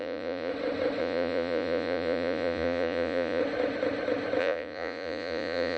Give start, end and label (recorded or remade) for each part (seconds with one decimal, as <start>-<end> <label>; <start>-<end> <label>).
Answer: 0.0-0.5 remade; 0.5-1.0 recorded; 1.0-3.4 remade; 3.4-4.4 recorded; 4.4-5.8 remade